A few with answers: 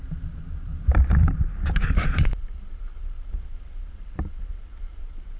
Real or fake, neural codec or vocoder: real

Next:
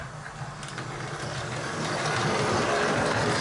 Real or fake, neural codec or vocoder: real